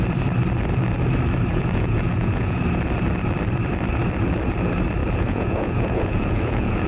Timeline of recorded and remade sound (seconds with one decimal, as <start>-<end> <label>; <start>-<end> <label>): 0.0-1.5 recorded; 1.5-2.6 remade; 2.6-5.0 recorded; 5.0-6.9 remade